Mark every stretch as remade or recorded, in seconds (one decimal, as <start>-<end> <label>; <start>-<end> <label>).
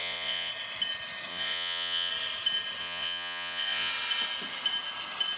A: 0.0-0.5 remade; 0.5-1.3 recorded; 1.3-2.1 remade; 2.1-2.8 recorded; 2.8-3.9 remade; 3.9-5.4 recorded